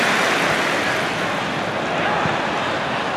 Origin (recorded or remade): recorded